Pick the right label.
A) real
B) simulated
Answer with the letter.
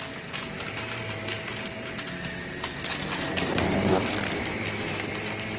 A